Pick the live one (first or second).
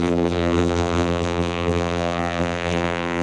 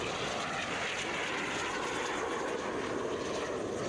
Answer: second